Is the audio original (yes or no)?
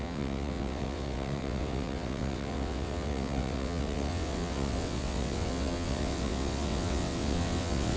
no